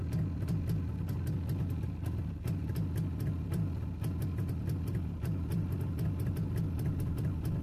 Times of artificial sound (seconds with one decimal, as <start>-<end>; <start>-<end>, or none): none